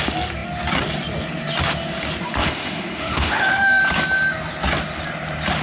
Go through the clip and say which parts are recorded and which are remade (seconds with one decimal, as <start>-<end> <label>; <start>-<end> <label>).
0.0-2.4 recorded; 2.4-3.8 remade; 3.8-5.6 recorded